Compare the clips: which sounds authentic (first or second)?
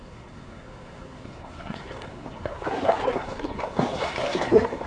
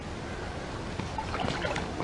second